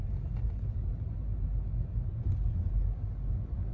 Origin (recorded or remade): recorded